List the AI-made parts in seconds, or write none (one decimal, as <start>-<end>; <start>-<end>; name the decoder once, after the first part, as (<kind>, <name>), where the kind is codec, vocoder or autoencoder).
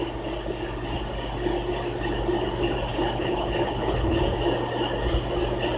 2.9-4.2 (codec, HILCodec)